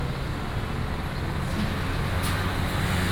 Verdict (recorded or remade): recorded